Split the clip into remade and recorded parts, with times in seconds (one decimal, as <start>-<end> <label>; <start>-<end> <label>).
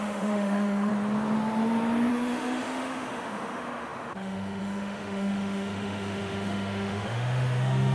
0.0-0.9 remade; 0.9-2.1 recorded; 2.1-7.9 remade